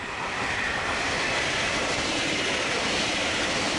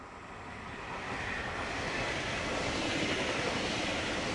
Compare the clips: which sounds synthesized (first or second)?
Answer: first